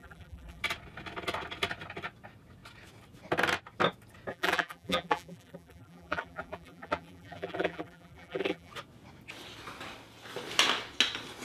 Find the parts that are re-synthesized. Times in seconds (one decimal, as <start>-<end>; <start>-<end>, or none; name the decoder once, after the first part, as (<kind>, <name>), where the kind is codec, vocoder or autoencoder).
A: 0.0-0.6 (vocoder, BigVGAN v2); 4.3-8.7